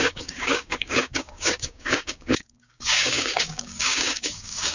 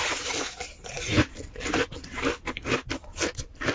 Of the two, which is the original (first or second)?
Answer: second